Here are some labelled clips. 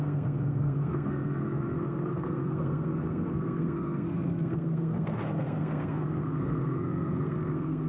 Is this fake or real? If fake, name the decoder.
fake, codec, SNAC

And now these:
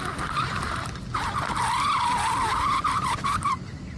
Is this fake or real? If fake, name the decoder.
real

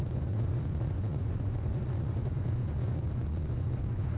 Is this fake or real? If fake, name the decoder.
fake, vocoder, Vocos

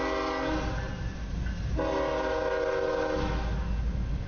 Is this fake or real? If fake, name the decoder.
real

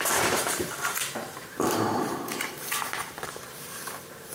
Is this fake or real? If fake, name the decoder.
fake, vocoder, BigVGAN v2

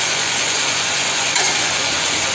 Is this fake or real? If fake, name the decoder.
fake, vocoder, Vocos